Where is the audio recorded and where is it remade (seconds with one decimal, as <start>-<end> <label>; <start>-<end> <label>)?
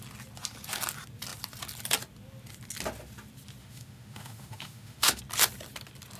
0.0-3.6 recorded; 3.6-5.2 remade; 5.2-6.2 recorded